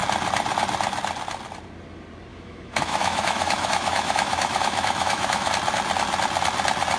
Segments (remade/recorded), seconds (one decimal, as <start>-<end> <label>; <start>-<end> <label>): 0.0-2.3 recorded; 2.3-5.5 remade; 5.5-7.0 recorded